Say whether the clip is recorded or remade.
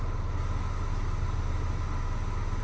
recorded